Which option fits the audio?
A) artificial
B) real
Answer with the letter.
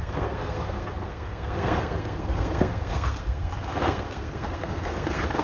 A